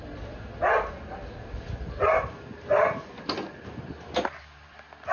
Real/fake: real